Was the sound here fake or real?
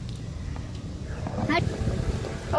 real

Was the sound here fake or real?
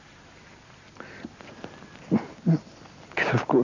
real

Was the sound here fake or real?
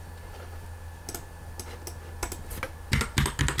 real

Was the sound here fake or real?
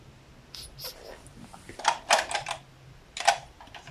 real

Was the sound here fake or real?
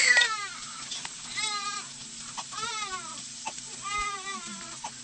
fake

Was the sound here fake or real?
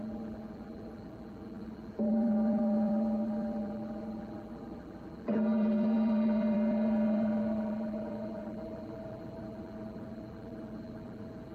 fake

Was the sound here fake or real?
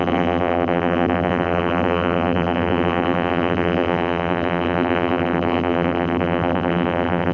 fake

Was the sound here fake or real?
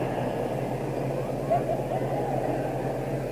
real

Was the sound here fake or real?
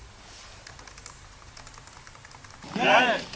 real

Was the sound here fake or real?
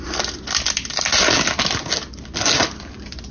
real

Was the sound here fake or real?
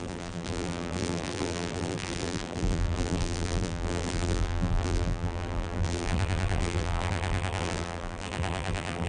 fake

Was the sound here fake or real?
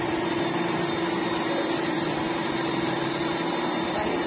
fake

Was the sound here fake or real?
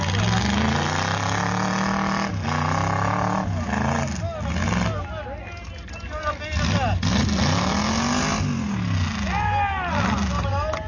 real